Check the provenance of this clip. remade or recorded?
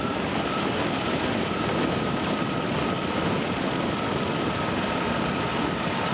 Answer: recorded